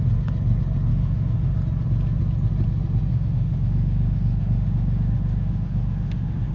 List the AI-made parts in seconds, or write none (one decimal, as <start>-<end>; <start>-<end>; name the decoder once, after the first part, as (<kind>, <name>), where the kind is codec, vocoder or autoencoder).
0.9-1.6 (autoencoder, DAC-VAE); 3.1-6.5